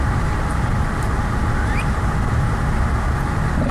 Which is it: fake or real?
fake